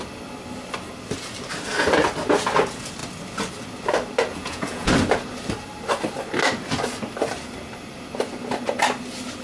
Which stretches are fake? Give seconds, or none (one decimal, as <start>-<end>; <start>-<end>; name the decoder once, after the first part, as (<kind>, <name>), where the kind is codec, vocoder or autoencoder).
4.3-4.9 (vocoder, Vocos)